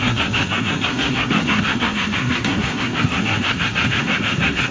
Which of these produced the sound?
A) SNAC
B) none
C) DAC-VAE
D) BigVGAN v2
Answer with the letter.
A